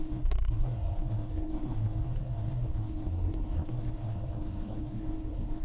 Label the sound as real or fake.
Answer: fake